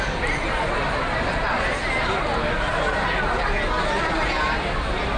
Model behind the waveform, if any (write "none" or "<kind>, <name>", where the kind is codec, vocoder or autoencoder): none